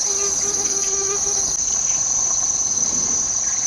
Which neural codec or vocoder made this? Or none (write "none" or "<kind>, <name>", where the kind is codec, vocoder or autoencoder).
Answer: none